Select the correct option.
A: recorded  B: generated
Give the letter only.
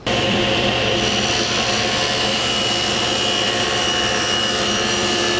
B